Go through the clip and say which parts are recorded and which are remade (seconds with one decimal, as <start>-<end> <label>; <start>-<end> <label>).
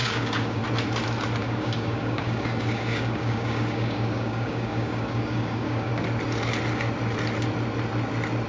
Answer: 0.0-0.6 remade; 0.6-1.4 recorded; 1.4-5.9 remade; 5.9-8.5 recorded